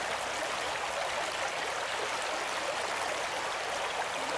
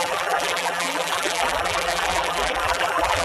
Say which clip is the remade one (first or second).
second